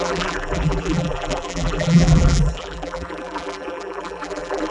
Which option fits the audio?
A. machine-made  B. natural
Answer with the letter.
A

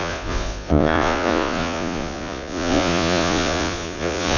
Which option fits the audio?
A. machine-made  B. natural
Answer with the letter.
A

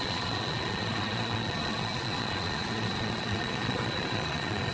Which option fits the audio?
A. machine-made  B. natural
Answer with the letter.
A